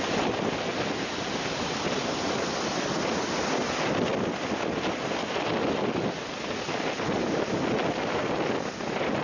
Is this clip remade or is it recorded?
recorded